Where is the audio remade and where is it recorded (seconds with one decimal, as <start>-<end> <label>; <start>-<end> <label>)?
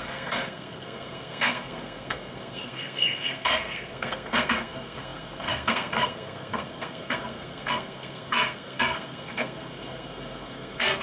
0.0-11.0 remade